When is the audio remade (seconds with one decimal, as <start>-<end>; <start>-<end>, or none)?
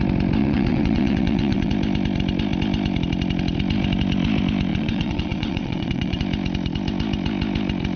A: 0.4-1.7; 4.7-6.2